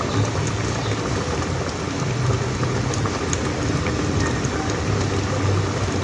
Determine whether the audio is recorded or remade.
recorded